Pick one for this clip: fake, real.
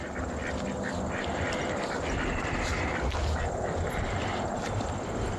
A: real